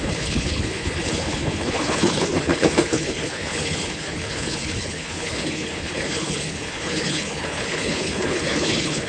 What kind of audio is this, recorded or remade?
remade